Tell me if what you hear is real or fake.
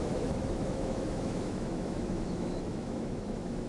fake